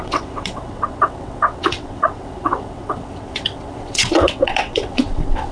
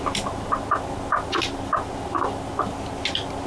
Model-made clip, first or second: first